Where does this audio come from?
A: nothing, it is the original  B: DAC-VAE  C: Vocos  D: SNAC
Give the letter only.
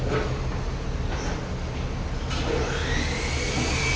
A